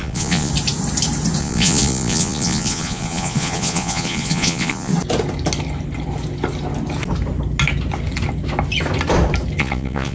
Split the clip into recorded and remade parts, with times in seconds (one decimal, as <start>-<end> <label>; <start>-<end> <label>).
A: 0.0-0.5 remade; 0.5-1.4 recorded; 1.4-4.9 remade; 4.9-9.6 recorded; 9.6-10.1 remade